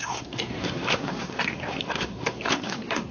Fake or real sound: fake